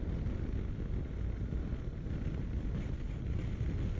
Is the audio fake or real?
real